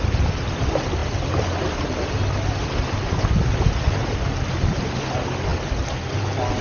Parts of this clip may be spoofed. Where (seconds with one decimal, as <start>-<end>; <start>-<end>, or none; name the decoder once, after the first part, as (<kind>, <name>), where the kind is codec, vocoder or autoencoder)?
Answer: none